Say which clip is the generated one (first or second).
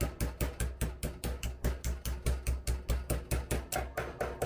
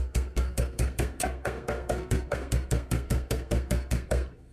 second